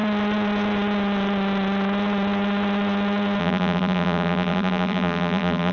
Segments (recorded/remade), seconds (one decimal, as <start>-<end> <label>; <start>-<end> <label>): 0.0-3.4 recorded; 3.4-5.7 remade